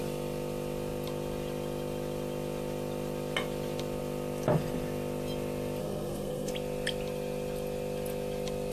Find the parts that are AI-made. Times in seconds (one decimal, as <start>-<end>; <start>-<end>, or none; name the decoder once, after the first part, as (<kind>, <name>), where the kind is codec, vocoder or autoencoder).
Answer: 5.8-6.5 (codec, SNAC)